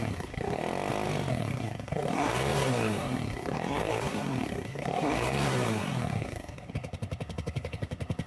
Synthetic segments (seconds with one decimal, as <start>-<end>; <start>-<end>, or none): 0.0-0.6; 1.3-8.3